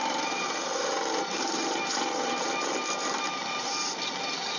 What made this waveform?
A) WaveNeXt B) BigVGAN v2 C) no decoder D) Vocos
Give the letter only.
B